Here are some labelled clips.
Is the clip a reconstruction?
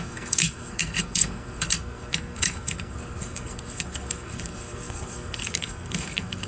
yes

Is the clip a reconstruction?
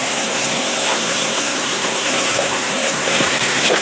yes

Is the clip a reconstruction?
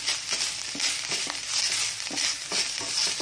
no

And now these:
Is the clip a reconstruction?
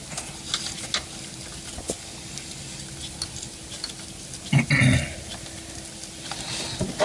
no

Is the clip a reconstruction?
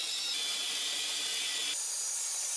no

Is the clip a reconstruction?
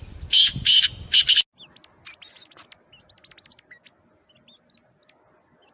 no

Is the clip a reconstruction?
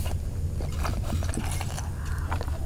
no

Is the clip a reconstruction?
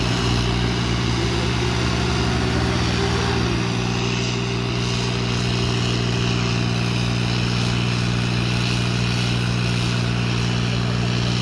no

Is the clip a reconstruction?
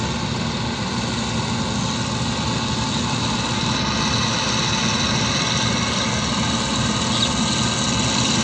no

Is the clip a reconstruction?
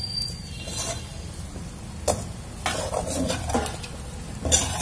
no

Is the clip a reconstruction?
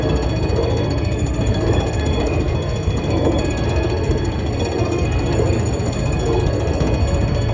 yes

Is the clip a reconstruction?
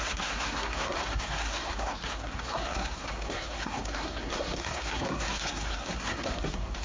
yes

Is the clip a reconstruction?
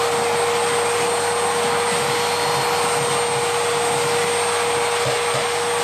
no